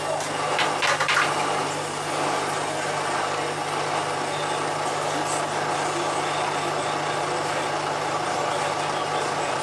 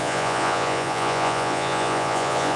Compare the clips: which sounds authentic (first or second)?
first